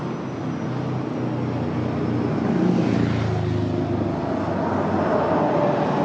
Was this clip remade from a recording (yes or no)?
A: no